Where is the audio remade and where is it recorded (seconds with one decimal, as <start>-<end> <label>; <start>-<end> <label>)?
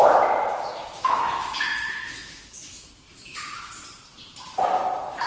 0.0-0.5 recorded; 0.5-3.7 remade; 3.7-5.3 recorded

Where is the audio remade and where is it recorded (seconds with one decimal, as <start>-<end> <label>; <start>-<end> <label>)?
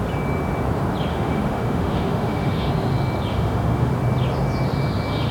0.0-1.1 recorded; 1.1-2.7 remade; 2.7-3.3 recorded; 3.3-3.9 remade; 3.9-5.3 recorded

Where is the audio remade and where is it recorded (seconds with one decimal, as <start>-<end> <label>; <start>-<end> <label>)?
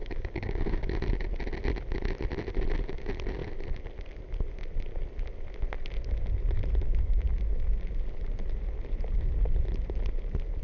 0.0-0.9 remade; 0.9-10.6 recorded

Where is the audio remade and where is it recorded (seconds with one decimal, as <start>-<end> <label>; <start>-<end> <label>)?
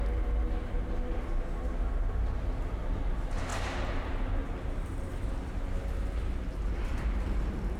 0.0-3.5 recorded; 3.5-5.3 remade; 5.3-6.9 recorded; 6.9-7.8 remade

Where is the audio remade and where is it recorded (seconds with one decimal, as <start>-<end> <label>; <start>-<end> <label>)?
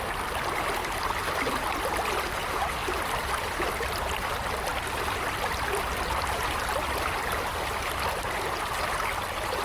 0.0-9.6 recorded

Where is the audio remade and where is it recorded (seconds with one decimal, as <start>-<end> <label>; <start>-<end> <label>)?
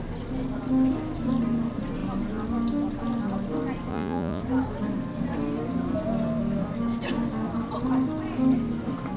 0.0-3.9 recorded; 3.9-4.4 remade; 4.4-9.2 recorded